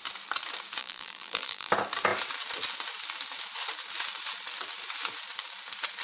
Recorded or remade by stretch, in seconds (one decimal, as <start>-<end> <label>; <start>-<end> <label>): 0.0-0.8 recorded; 0.8-1.7 remade; 1.7-6.0 recorded